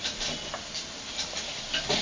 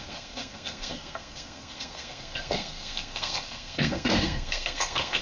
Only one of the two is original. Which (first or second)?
first